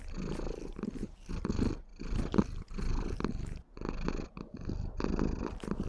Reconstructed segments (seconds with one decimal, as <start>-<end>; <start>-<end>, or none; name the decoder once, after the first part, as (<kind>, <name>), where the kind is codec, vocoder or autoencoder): 1.9-5.4 (vocoder, BigVGAN v2)